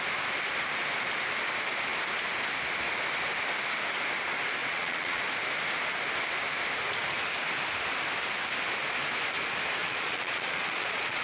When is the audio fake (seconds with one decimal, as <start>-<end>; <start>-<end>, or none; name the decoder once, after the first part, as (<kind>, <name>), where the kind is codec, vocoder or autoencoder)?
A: 4.6-5.2 (vocoder, Vocos); 9.8-11.2